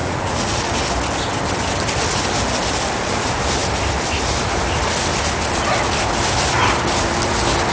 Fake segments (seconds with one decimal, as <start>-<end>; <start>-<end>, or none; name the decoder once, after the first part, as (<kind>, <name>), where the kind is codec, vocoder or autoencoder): 0.0-0.6 (vocoder, Vocos)